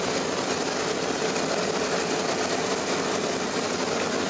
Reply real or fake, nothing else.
real